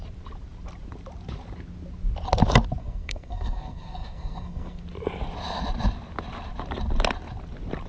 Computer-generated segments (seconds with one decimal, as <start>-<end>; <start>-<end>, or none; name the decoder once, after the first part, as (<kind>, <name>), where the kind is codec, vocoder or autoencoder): 2.8-4.8 (codec, SNAC)